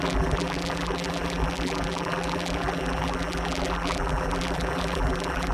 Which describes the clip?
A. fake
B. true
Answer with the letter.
A